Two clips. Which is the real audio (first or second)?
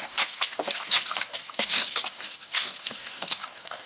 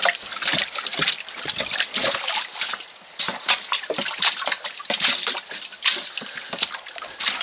second